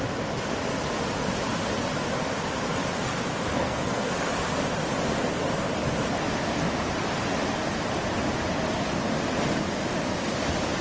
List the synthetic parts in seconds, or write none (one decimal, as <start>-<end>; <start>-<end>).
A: 3.5-4.1